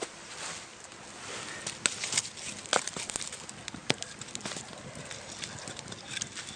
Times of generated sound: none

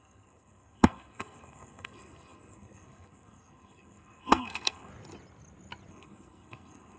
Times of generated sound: 0.0-4.9; 5.9-7.0